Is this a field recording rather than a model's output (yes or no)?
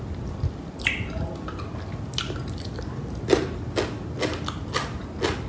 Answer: yes